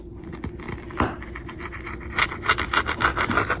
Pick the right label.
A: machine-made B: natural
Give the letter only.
B